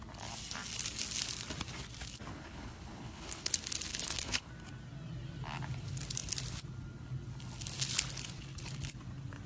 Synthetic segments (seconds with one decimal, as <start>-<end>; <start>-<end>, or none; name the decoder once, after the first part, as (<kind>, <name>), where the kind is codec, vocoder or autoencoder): 2.3-3.5 (codec, HILCodec); 3.9-4.5

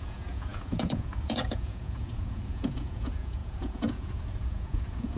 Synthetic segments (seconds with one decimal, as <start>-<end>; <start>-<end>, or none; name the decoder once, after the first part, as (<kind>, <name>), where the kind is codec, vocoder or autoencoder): 0.0-5.2 (vocoder, Vocos)